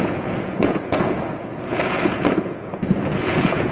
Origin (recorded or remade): remade